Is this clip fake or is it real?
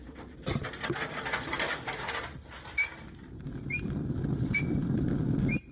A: real